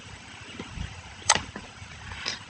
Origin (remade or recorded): remade